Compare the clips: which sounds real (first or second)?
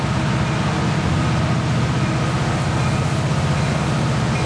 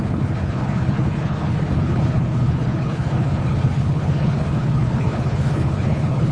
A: first